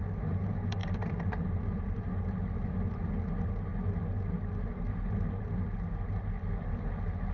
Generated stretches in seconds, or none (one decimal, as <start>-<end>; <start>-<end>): 0.8-2.2

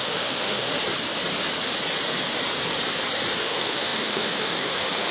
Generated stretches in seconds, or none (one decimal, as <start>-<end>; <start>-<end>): 0.0-0.7; 3.4-5.1

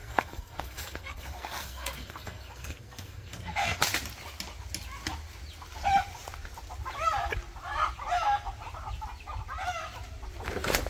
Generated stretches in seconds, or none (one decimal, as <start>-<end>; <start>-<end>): 0.0-3.8

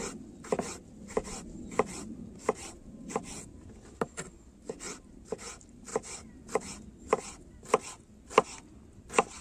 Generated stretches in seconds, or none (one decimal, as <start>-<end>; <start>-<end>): none

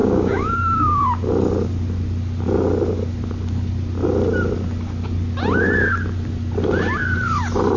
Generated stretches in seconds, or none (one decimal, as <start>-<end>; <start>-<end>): 0.0-1.0